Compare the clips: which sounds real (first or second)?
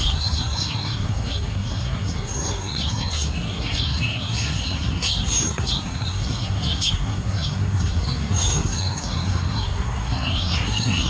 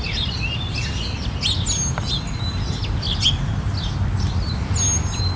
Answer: second